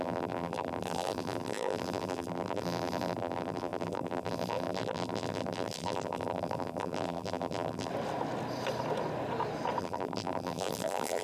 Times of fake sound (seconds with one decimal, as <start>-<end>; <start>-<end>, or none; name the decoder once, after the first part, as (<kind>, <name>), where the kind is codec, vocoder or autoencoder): 0.0-7.9 (vocoder, BigVGAN v2); 9.8-11.2